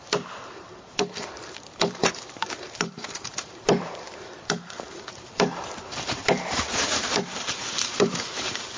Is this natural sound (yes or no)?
no